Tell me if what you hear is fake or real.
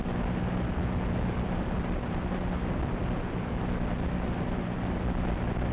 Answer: real